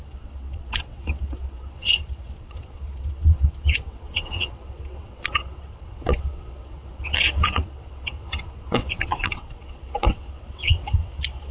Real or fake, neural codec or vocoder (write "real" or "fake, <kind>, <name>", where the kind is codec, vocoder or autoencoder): fake, vocoder, WaveNeXt